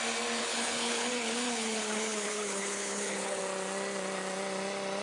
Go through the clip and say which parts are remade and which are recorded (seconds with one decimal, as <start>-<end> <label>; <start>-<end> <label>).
0.0-0.4 recorded; 0.4-3.4 remade; 3.4-5.0 recorded